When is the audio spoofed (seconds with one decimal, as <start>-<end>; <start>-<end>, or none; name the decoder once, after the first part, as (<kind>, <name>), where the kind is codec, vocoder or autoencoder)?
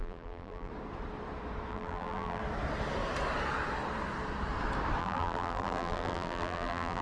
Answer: 0.0-0.7 (vocoder, BigVGAN v2); 1.7-2.4; 5.0-7.0